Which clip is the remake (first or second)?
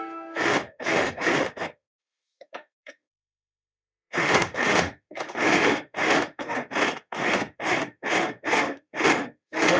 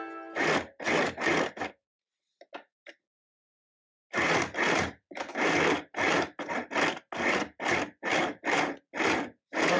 first